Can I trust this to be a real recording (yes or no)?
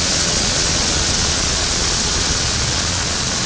no